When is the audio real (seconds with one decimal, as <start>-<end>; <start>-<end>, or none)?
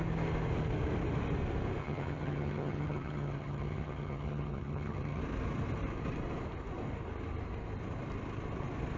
0.0-1.8; 5.2-9.0